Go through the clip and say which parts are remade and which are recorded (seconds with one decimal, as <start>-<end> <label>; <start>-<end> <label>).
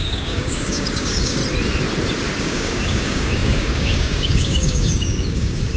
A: 0.0-1.4 remade; 1.4-2.4 recorded; 2.4-5.8 remade